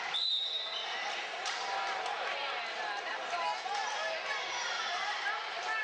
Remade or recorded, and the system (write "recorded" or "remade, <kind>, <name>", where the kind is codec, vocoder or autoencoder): remade, vocoder, BigVGAN v2